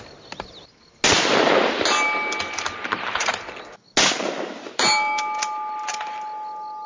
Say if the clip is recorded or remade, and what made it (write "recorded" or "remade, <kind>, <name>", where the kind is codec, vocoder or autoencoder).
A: recorded